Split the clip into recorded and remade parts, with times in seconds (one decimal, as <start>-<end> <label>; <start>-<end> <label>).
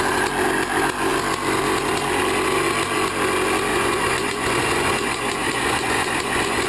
0.0-3.7 recorded; 3.7-6.7 remade